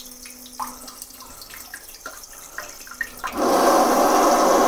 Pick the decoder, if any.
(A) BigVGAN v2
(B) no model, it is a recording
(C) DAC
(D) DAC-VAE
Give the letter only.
B